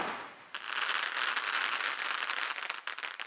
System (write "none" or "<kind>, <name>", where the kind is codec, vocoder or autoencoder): none